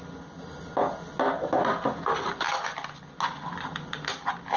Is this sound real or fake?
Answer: real